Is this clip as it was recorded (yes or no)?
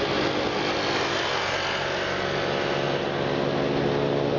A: yes